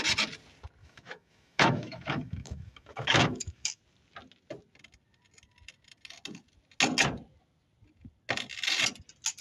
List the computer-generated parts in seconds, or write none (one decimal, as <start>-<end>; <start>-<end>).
0.8-3.8